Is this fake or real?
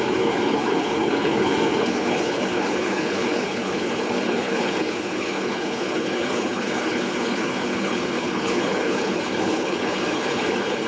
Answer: fake